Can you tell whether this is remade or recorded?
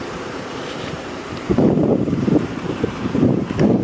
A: remade